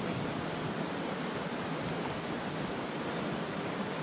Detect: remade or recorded recorded